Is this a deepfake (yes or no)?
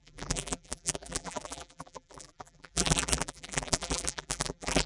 yes